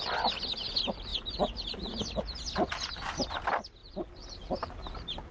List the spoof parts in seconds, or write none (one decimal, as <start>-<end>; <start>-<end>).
3.8-5.3